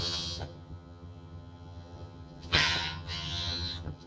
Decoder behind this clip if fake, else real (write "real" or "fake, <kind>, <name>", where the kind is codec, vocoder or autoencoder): fake, vocoder, HiFi-GAN